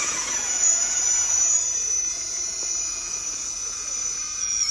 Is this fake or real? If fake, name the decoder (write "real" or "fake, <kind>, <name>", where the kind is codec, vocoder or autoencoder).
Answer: fake, vocoder, Vocos